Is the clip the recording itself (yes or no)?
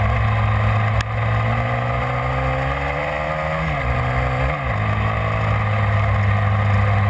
yes